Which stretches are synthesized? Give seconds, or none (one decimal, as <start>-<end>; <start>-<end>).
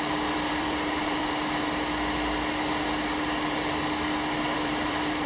0.0-1.2; 4.4-5.3